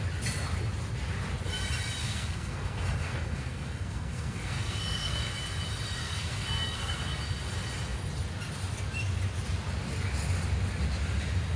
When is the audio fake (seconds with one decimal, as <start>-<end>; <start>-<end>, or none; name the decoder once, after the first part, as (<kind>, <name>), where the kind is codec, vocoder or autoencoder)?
2.0-5.3 (codec, SNAC); 6.0-7.2